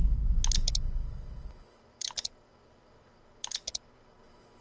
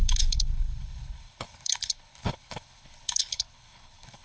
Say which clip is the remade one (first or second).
second